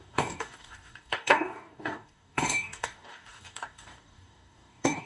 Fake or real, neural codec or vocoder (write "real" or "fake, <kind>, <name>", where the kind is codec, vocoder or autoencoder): fake, codec, DAC